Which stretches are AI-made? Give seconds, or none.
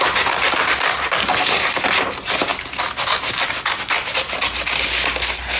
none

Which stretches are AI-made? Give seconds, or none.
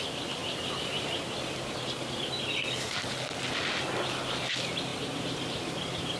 4.9-6.2 (vocoder, BigVGAN v2)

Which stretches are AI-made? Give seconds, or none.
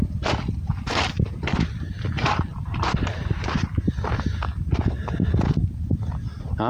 2.5-4.1 (vocoder, BigVGAN v2)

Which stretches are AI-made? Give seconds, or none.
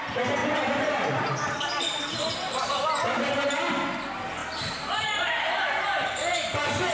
0.4-2.7 (vocoder, BigVGAN v2); 4.4-5.7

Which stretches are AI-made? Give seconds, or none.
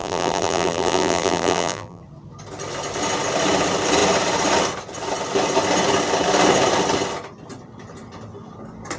0.0-2.0 (vocoder, BigVGAN v2)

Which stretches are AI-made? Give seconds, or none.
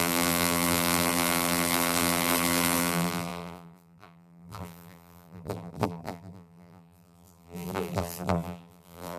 0.0-9.2 (vocoder, BigVGAN v2)